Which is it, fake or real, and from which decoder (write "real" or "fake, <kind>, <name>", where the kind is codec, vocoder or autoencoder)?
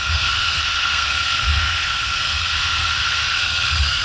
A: fake, codec, SNAC